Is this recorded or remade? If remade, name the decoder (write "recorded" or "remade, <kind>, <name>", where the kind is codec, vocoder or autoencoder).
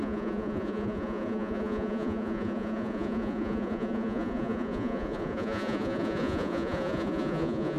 remade, vocoder, Vocos